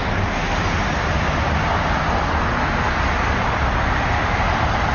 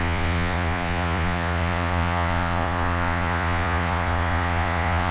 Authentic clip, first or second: first